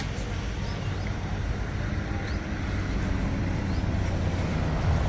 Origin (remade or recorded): recorded